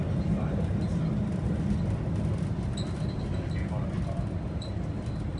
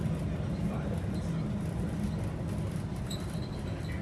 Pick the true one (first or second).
second